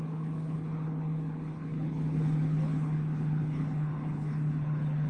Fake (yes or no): yes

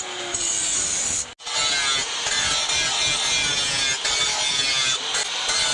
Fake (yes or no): no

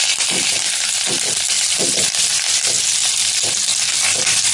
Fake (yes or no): no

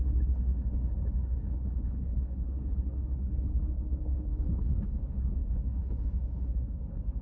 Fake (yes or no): yes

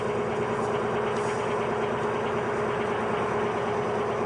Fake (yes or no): no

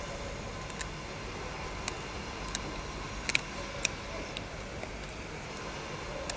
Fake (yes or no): no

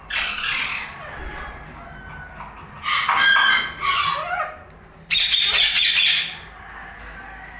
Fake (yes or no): no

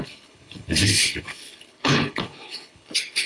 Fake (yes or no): yes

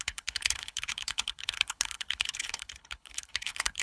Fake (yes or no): yes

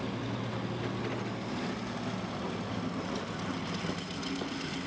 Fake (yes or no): no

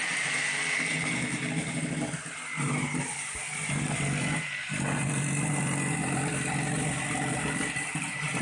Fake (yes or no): no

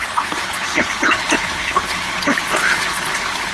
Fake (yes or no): yes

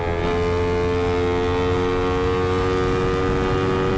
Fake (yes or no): no